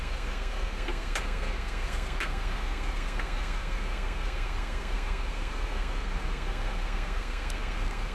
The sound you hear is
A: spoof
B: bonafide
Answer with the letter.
A